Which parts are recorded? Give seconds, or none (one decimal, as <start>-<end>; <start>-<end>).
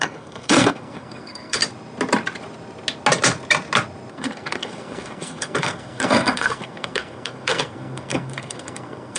1.6-4.1